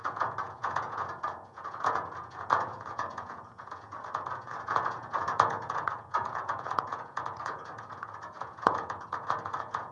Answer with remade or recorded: remade